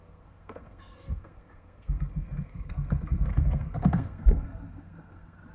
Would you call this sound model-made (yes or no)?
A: yes